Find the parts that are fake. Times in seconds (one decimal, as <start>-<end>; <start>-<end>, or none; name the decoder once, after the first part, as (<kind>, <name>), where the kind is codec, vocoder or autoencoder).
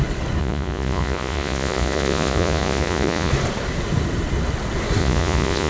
0.4-3.3 (vocoder, Vocos); 5.0-5.7